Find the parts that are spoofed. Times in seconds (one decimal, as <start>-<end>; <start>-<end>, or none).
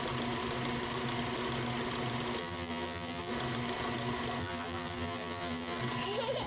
2.4-3.3; 4.4-5.8